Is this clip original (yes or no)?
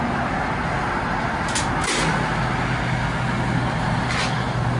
yes